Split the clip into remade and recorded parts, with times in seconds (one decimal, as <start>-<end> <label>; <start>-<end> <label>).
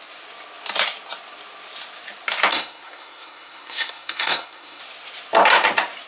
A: 0.0-2.5 recorded; 2.5-4.8 remade; 4.8-6.1 recorded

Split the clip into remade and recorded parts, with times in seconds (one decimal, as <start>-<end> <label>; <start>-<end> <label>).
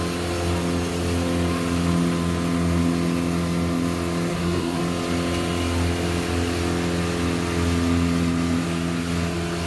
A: 0.0-4.3 recorded; 4.3-4.8 remade; 4.8-9.7 recorded